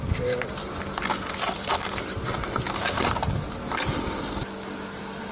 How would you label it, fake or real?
real